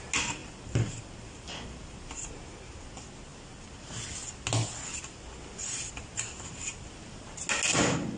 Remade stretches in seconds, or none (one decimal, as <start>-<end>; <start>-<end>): 0.4-2.3